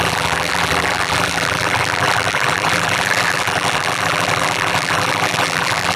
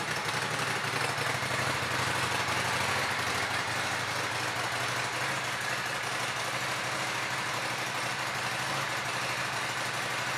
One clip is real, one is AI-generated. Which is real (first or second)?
second